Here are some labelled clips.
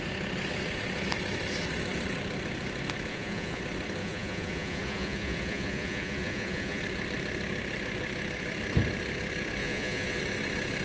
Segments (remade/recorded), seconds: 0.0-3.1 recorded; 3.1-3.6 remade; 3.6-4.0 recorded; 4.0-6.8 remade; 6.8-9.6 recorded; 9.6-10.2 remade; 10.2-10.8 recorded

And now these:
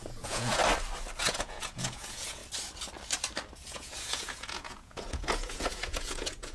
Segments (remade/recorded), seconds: 0.0-0.6 remade; 0.6-1.2 recorded; 1.2-2.4 remade; 2.4-3.7 recorded; 3.7-6.5 remade

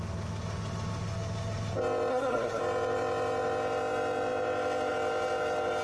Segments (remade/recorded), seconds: 0.0-2.1 recorded; 2.1-2.6 remade; 2.6-5.8 recorded

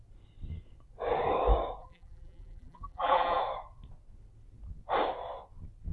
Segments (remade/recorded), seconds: 0.0-1.8 recorded; 1.8-3.4 remade; 3.4-5.9 recorded

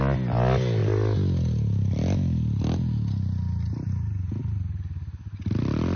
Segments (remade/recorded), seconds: 0.0-6.0 recorded

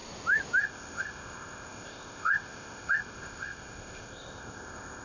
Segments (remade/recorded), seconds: 0.0-0.6 recorded; 0.6-5.0 remade